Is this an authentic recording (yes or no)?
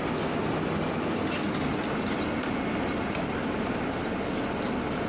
yes